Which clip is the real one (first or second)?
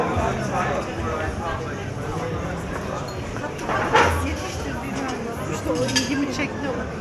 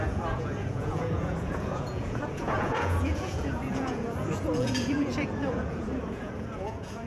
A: first